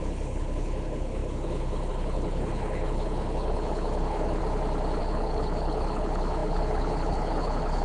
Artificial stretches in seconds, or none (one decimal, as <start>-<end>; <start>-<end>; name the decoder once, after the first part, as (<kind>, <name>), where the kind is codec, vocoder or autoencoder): 0.0-4.4 (codec, HILCodec); 5.0-7.8